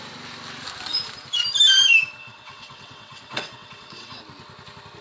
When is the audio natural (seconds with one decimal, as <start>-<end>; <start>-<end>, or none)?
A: 0.0-2.2; 4.2-5.0